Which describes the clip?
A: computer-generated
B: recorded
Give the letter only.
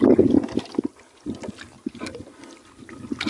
B